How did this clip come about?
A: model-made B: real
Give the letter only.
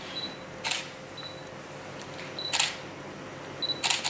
B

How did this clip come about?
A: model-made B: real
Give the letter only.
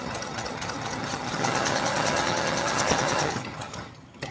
A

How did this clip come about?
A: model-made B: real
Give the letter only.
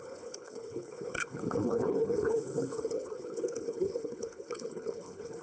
A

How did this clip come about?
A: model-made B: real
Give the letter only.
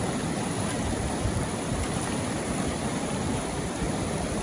B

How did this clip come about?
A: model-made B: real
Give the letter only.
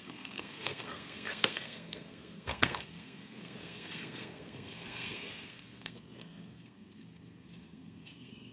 A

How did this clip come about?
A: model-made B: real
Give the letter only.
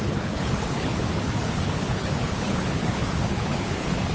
A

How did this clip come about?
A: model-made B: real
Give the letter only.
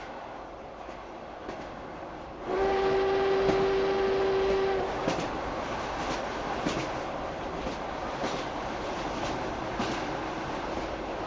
B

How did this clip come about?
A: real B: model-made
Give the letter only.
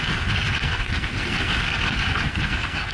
B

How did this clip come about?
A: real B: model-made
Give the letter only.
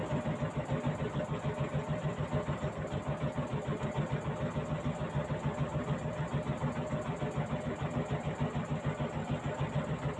A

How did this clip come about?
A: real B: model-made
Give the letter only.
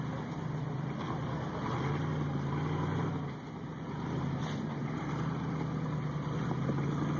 A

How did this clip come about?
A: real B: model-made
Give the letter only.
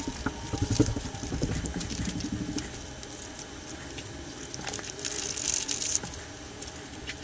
B